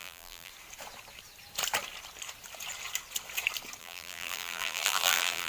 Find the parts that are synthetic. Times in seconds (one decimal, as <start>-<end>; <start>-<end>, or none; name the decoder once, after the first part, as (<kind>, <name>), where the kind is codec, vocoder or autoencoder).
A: 0.0-0.5 (vocoder, BigVGAN v2); 3.8-5.5